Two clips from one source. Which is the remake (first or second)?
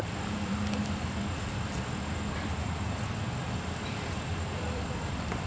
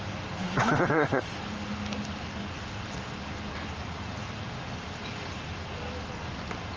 first